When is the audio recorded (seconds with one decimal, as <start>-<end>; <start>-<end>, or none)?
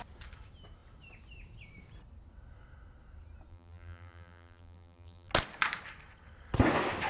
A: 0.0-3.5; 5.3-7.1